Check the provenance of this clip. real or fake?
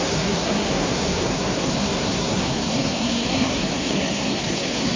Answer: fake